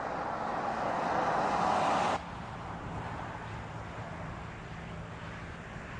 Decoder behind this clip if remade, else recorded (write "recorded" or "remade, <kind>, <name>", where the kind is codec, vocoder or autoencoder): recorded